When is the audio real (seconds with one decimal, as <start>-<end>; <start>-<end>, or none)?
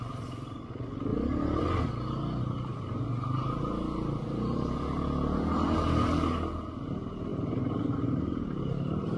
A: 0.0-1.1; 1.8-2.7; 3.6-7.3